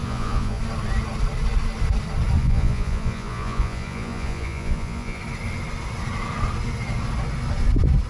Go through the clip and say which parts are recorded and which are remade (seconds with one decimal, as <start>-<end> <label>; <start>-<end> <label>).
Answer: 0.0-0.6 remade; 0.6-2.4 recorded; 2.4-5.2 remade; 5.2-8.1 recorded